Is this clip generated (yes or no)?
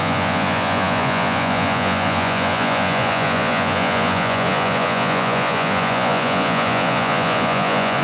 yes